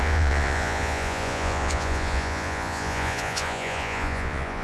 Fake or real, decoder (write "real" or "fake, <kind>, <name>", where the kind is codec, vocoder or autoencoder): fake, vocoder, Vocos